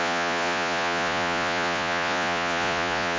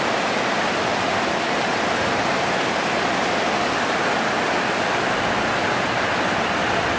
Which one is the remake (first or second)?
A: first